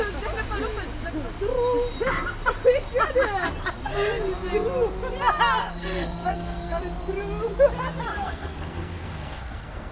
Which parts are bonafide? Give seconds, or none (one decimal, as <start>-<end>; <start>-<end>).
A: 0.0-5.6; 6.8-8.1